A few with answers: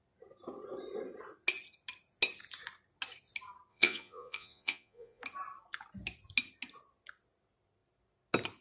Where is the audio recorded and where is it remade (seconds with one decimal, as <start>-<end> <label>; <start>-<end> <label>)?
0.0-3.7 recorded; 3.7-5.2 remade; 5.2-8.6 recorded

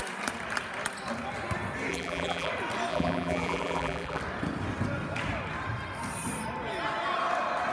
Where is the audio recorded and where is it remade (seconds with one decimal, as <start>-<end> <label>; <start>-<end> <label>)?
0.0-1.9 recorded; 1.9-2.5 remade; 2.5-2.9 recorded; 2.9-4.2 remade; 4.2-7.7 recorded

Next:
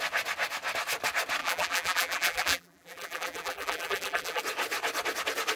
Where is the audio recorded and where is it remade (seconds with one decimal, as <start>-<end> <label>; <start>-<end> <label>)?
0.0-1.4 recorded; 1.4-4.4 remade; 4.4-5.6 recorded